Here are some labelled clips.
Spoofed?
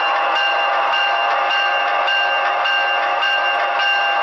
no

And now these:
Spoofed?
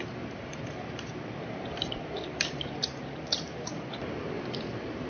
yes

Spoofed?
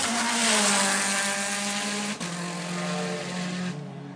no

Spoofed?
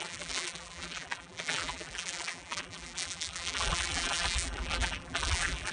yes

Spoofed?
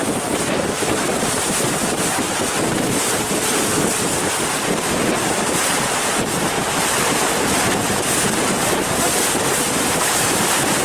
yes